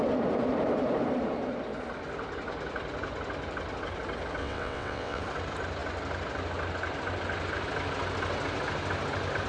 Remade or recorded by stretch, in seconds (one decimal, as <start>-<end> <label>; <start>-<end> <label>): 0.0-4.4 recorded; 4.4-5.2 remade; 5.2-9.5 recorded